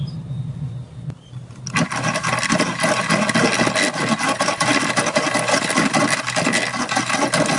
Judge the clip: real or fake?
real